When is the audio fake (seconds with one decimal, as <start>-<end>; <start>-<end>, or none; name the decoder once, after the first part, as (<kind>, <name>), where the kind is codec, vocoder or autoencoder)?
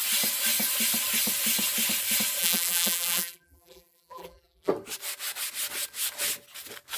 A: 2.4-4.7 (vocoder, BigVGAN v2)